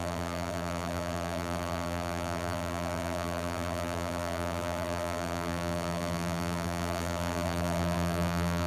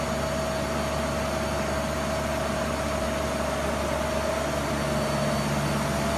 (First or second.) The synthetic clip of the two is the first